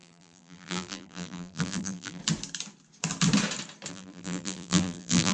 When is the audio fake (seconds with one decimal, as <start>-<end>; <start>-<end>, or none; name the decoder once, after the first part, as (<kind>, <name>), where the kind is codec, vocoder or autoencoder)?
0.0-2.2 (vocoder, BigVGAN v2); 3.9-5.3

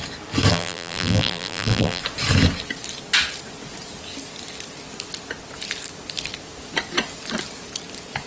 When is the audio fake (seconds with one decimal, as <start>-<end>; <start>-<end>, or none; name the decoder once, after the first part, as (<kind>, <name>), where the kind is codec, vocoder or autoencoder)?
0.5-2.0 (vocoder, BigVGAN v2)